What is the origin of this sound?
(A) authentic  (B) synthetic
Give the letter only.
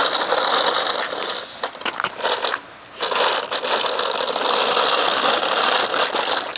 A